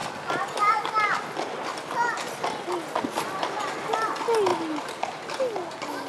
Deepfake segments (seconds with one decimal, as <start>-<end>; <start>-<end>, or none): none

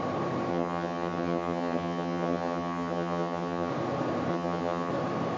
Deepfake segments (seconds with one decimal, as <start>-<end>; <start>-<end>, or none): 0.5-3.7; 4.3-4.9

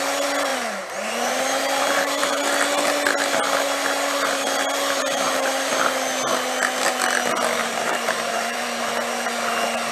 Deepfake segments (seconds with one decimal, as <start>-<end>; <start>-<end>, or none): 0.5-2.4; 5.0-5.7; 7.6-8.9